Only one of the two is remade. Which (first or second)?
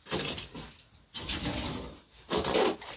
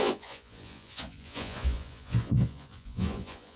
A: second